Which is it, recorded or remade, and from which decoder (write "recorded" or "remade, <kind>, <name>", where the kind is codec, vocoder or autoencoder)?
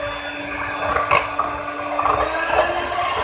recorded